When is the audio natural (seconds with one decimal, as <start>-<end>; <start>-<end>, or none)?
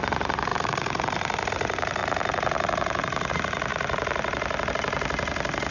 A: 0.0-0.5; 1.5-5.7